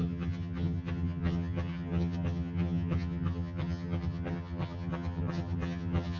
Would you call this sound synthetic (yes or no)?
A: yes